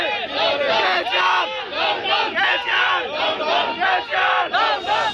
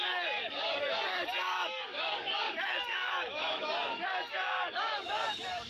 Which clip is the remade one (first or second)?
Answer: second